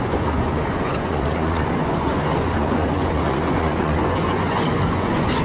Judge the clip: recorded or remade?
remade